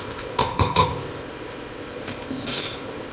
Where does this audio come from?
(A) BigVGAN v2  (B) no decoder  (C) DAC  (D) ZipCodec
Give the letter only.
D